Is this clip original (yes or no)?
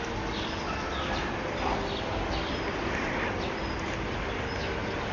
yes